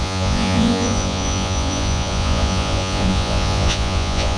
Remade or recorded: remade